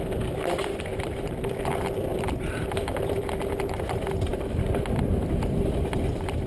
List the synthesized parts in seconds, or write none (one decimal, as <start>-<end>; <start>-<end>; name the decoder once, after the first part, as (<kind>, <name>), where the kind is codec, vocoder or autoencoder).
none

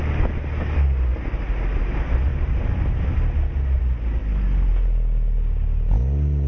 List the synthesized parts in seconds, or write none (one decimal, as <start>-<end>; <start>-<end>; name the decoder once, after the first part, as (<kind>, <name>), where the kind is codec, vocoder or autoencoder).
4.2-4.7 (vocoder, BigVGAN v2)